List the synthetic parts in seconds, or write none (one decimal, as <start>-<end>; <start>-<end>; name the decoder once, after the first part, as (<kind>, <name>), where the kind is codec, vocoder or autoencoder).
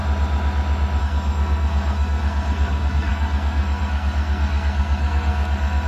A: 1.0-5.9 (codec, SNAC)